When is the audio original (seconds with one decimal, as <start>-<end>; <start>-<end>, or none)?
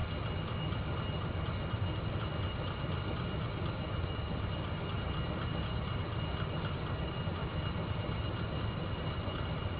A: 0.0-7.4; 9.4-9.8